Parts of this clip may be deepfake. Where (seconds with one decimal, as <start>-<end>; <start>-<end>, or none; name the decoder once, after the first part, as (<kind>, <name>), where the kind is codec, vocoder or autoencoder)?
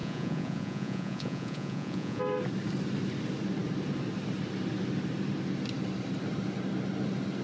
0.0-2.2 (vocoder, Vocos)